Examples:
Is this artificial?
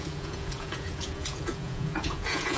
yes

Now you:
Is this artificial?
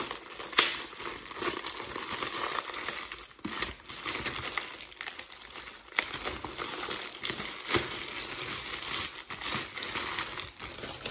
no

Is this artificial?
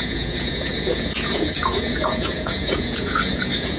yes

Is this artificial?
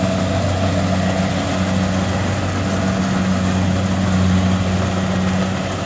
no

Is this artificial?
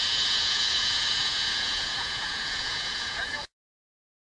yes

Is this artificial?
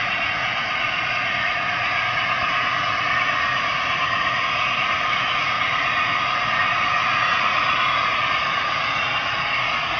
yes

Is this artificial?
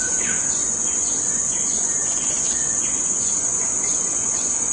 yes